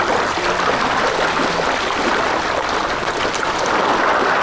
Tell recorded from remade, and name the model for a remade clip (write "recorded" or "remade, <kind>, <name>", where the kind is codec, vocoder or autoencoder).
recorded